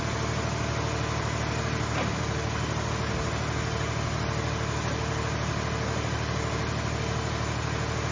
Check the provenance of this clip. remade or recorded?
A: recorded